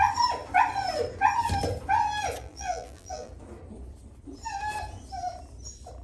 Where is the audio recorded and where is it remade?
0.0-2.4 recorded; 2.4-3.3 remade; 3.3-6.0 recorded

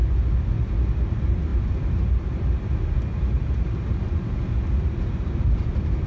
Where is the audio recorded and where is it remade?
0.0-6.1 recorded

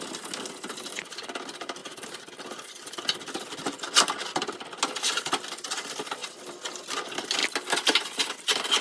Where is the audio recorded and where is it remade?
0.0-1.8 recorded; 1.8-3.0 remade; 3.0-6.2 recorded; 6.2-6.7 remade; 6.7-8.8 recorded

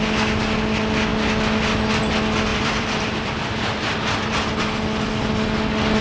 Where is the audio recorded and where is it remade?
0.0-2.5 recorded; 2.5-3.6 remade; 3.6-6.0 recorded

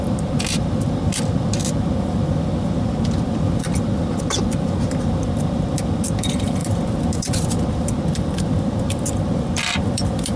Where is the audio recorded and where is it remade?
0.0-10.4 remade

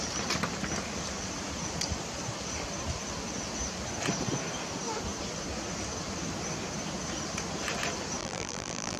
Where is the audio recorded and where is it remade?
0.0-8.2 recorded; 8.2-9.0 remade

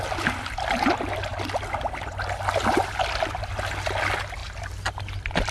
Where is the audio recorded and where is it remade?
0.0-5.5 recorded

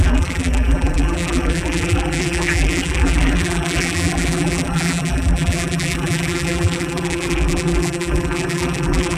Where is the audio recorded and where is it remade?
0.0-9.2 remade